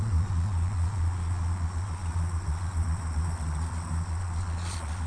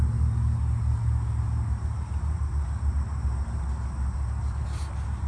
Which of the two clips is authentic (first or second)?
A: second